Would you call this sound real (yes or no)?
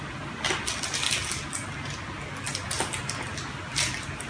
yes